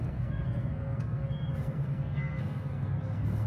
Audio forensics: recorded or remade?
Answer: remade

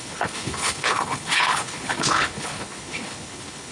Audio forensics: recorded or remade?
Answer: remade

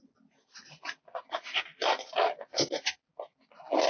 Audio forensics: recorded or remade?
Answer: recorded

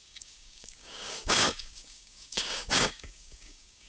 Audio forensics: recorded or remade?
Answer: remade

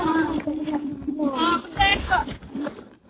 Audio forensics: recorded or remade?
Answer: recorded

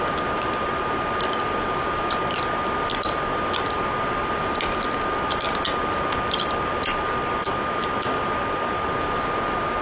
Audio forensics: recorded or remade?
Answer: recorded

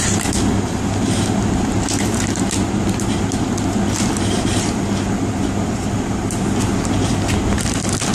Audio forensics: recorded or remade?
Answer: recorded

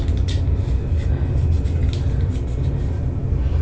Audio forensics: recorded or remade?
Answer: recorded